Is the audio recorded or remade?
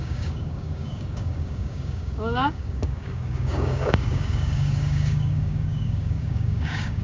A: remade